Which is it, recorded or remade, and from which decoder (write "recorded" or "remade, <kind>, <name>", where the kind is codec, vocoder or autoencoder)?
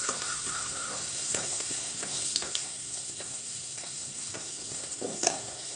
remade, codec, SNAC